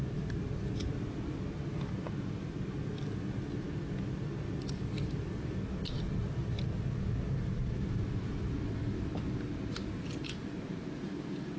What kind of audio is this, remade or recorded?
recorded